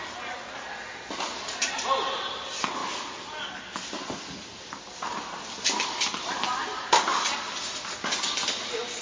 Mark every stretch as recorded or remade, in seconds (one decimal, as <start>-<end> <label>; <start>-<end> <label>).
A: 0.0-9.0 recorded